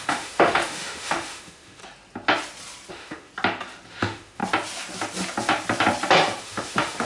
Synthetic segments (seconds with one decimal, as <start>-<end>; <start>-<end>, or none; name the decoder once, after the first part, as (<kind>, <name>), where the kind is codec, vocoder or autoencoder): 0.0-1.8 (autoencoder, DAC-VAE); 2.9-3.3; 4.0-4.4; 6.4-7.1